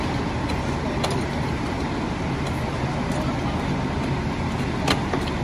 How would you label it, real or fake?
real